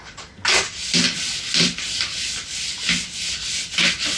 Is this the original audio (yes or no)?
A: yes